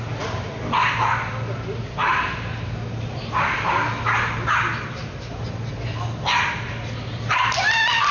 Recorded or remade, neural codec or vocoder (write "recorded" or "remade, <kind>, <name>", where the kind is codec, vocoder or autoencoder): recorded